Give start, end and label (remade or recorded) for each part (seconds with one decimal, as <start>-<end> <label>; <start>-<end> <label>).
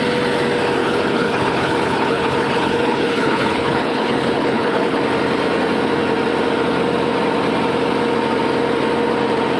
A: 0.0-0.8 recorded; 0.8-5.0 remade; 5.0-9.6 recorded